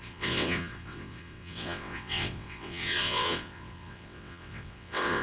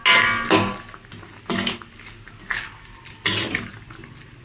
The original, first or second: second